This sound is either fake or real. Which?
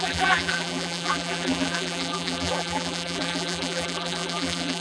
fake